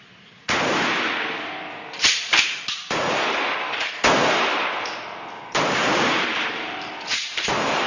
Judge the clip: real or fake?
fake